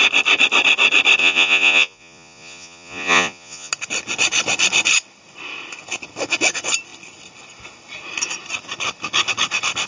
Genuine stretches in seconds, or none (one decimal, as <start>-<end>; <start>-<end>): 0.0-1.2; 3.7-9.9